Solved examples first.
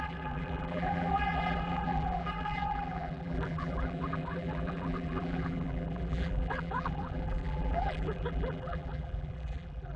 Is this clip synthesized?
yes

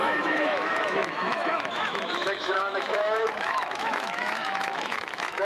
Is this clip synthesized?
yes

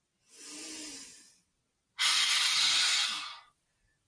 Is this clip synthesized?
no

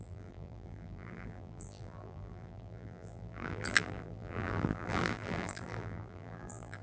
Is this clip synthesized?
yes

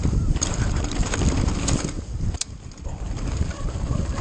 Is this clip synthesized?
yes